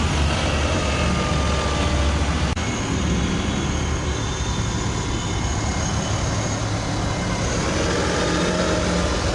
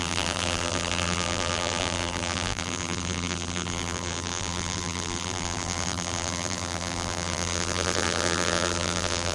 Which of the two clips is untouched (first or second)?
first